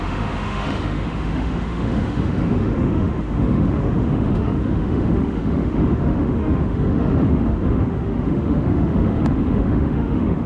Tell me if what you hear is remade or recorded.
remade